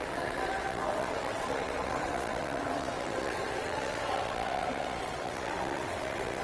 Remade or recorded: remade